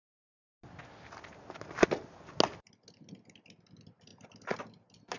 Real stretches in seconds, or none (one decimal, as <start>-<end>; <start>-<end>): 0.0-5.2